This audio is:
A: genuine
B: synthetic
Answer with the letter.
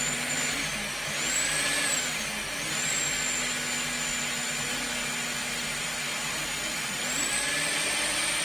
A